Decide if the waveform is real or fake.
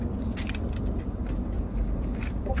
real